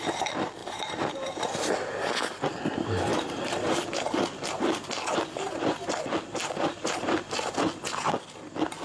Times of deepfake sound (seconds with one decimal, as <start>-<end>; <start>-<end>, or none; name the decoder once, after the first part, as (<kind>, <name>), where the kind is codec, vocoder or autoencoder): 0.6-1.7 (vocoder, BigVGAN v2); 3.1-3.7